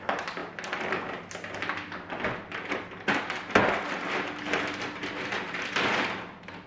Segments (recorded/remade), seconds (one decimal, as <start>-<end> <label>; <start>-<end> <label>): 0.0-6.7 recorded